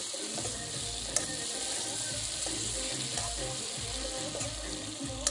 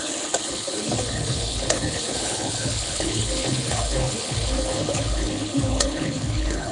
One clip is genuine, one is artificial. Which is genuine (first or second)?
first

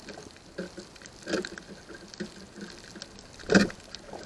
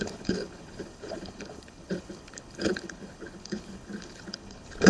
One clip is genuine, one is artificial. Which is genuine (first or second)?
first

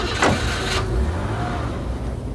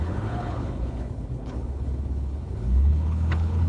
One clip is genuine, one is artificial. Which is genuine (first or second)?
first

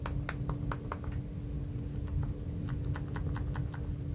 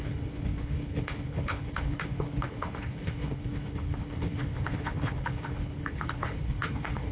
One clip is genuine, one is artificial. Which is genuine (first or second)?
first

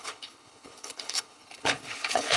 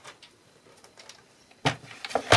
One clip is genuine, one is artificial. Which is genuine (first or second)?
second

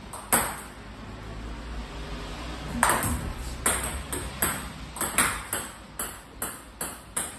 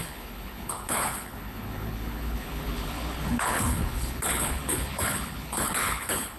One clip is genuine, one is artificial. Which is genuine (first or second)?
first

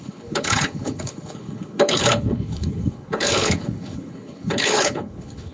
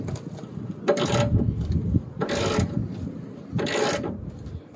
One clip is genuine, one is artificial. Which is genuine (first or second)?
second